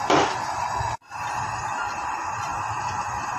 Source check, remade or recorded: recorded